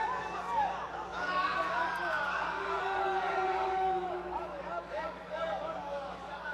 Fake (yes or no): yes